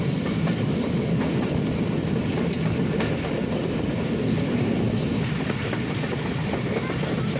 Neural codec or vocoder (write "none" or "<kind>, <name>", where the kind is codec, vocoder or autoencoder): none